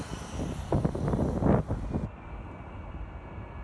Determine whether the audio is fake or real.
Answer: real